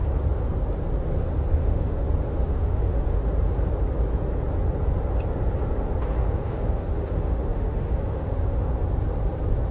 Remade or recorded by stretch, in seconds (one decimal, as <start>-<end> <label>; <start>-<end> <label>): 0.0-1.6 recorded; 1.6-2.1 remade; 2.1-2.5 recorded; 2.5-3.2 remade; 3.2-6.4 recorded; 6.4-8.7 remade; 8.7-9.7 recorded